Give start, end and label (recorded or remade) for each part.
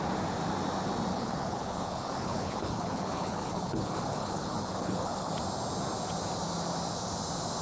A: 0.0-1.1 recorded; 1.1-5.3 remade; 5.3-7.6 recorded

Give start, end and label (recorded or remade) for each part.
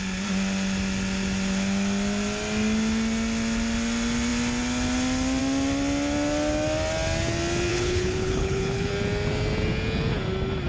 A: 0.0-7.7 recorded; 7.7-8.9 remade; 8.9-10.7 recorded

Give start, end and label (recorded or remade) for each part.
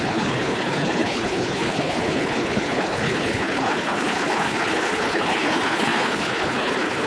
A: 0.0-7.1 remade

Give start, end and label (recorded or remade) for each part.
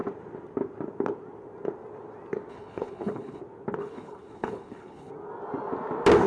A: 0.0-2.5 recorded; 2.5-3.4 remade; 3.4-3.8 recorded; 3.8-5.1 remade; 5.1-6.3 recorded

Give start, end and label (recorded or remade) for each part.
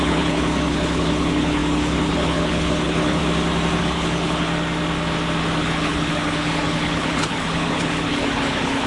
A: 0.0-3.2 remade; 3.2-3.8 recorded; 3.8-4.5 remade; 4.5-5.6 recorded; 5.6-8.9 remade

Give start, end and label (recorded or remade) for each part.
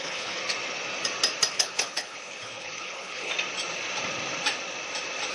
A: 0.0-0.4 remade; 0.4-1.5 recorded; 1.5-3.3 remade; 3.3-5.3 recorded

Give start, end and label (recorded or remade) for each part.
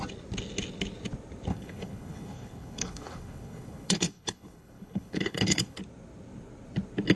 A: 0.0-1.5 recorded; 1.5-5.8 remade; 5.8-7.2 recorded